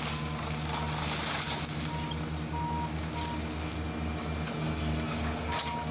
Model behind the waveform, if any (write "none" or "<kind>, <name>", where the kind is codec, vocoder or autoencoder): none